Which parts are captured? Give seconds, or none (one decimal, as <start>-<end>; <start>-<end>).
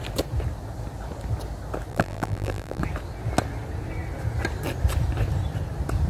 0.0-1.9; 2.8-6.1